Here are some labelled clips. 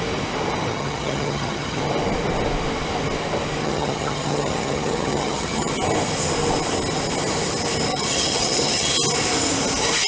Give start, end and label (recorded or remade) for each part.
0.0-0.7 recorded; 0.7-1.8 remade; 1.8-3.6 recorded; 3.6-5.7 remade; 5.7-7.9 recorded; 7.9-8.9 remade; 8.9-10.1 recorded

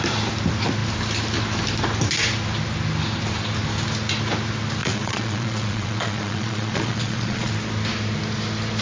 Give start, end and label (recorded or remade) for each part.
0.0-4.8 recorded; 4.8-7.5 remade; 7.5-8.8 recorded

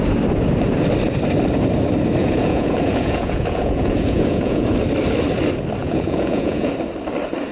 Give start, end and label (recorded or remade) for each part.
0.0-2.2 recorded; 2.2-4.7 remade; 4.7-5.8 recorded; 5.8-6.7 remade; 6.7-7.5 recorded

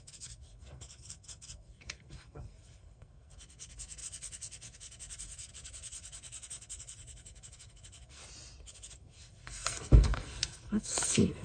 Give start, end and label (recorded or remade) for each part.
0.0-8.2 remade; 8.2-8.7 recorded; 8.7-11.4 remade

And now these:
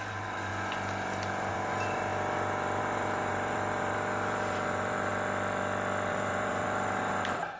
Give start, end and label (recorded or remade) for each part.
0.0-0.5 remade; 0.5-1.5 recorded; 1.5-2.1 remade; 2.1-2.8 recorded; 2.8-5.1 remade; 5.1-6.1 recorded; 6.1-7.6 remade